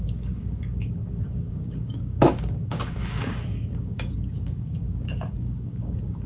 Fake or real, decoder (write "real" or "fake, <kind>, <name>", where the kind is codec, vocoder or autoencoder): fake, codec, DAC